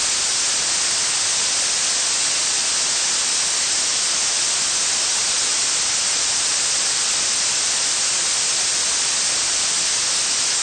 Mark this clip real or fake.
real